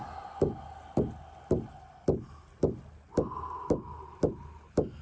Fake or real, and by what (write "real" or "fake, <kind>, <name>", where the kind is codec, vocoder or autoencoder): real